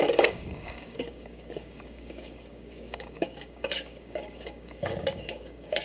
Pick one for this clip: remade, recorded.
remade